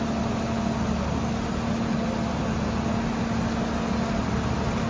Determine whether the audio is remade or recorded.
recorded